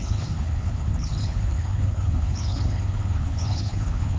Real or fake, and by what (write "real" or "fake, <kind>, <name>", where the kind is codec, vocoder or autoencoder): fake, codec, HILCodec